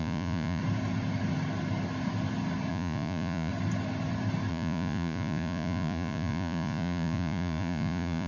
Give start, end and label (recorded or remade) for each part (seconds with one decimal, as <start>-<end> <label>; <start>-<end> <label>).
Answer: 0.0-0.6 remade; 0.6-2.7 recorded; 2.7-3.5 remade; 3.5-4.5 recorded; 4.5-8.3 remade